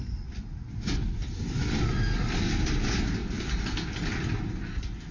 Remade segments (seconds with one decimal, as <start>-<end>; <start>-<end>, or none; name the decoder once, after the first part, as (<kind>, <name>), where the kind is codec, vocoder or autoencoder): none

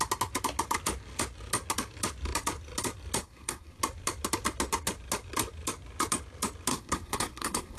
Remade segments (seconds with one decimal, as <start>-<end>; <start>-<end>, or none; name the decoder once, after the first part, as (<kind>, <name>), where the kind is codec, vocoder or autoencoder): 3.2-3.8 (codec, SNAC); 6.7-7.8